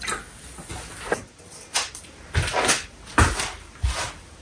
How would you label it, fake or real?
real